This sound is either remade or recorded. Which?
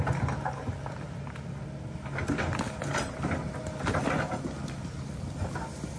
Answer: recorded